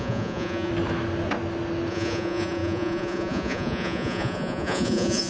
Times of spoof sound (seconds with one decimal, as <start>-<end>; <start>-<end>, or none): 0.0-0.7; 1.9-5.3